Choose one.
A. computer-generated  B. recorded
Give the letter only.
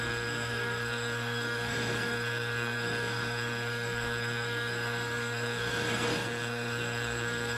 A